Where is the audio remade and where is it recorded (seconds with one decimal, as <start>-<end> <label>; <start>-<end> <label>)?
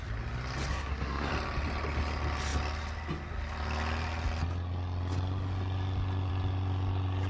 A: 0.0-0.7 recorded; 0.7-1.3 remade; 1.3-7.3 recorded